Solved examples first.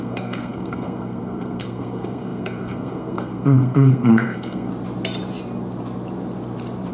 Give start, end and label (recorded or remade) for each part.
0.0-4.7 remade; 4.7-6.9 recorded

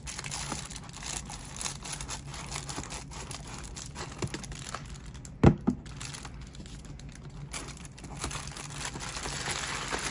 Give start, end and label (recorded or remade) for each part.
0.0-10.1 recorded